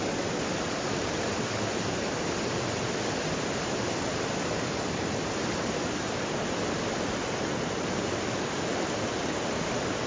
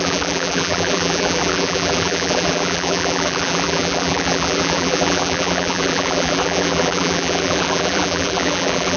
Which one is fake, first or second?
second